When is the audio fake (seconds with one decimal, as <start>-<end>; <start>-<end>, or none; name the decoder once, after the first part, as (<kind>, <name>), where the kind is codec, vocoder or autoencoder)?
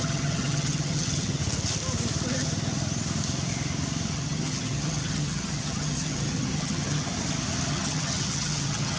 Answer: 0.0-1.4 (vocoder, HiFi-GAN); 4.1-7.1; 7.7-9.0